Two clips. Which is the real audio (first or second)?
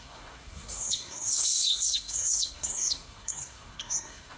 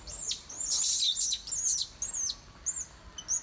second